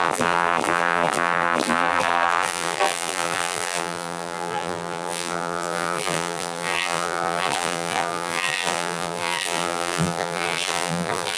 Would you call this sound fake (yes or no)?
yes